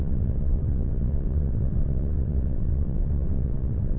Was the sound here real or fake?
fake